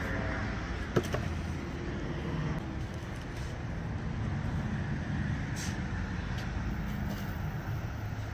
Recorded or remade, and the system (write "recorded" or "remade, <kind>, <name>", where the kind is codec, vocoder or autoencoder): recorded